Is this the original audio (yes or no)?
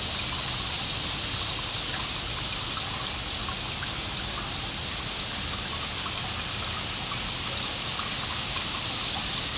yes